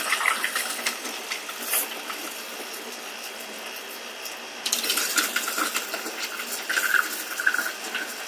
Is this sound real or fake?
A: real